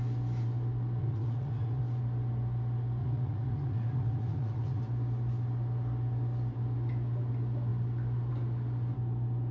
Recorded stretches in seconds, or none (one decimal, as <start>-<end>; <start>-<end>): 0.0-1.0; 1.8-3.0; 4.8-9.5